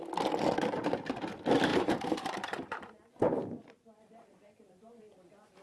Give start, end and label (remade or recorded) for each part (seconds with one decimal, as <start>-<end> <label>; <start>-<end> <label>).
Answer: 0.0-1.7 recorded; 1.7-5.0 remade; 5.0-5.6 recorded